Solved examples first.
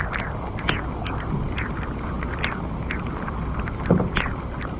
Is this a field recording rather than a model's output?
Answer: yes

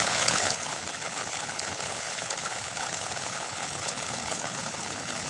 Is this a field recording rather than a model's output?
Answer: no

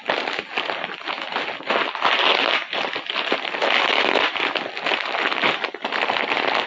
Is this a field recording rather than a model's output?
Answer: yes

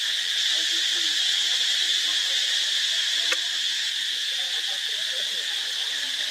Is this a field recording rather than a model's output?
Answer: yes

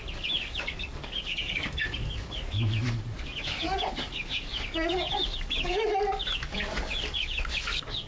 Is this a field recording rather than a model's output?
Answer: no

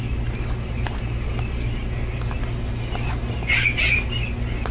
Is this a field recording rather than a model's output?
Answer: yes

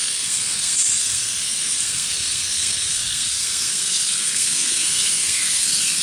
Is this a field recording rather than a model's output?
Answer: no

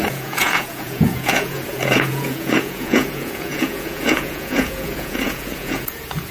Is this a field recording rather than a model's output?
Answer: no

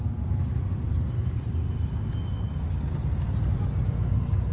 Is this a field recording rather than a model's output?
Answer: yes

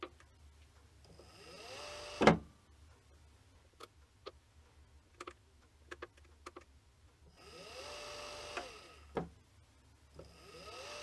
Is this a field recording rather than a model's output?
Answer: yes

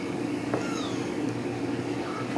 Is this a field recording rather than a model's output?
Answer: no